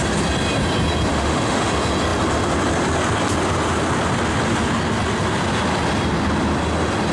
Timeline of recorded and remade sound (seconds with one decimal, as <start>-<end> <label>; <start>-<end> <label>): 0.0-1.1 recorded; 1.1-1.7 remade; 1.7-7.1 recorded